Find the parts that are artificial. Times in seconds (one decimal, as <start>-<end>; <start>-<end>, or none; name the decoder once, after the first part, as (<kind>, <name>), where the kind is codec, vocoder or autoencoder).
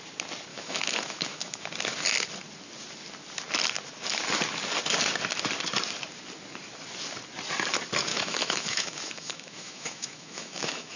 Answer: 0.5-1.7 (autoencoder, DAC-VAE); 8.1-11.0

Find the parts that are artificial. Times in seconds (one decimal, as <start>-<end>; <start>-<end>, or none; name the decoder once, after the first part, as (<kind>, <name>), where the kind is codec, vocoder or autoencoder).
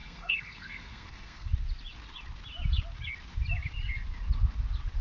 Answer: 0.0-1.5 (codec, SNAC)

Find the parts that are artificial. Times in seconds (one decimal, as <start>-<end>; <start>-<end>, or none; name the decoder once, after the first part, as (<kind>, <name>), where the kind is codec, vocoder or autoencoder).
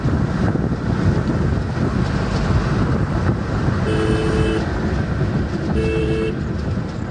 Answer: none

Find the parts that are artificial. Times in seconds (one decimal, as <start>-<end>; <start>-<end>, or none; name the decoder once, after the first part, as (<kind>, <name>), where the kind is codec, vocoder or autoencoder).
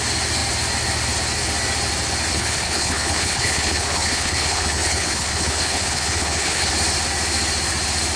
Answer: 2.3-6.7 (codec, HILCodec)